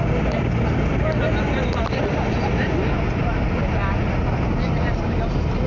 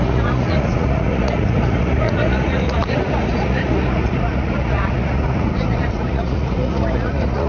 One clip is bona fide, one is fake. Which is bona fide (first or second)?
first